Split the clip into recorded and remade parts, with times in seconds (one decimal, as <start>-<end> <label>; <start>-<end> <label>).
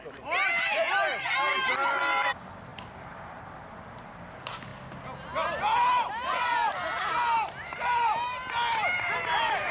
0.0-9.7 recorded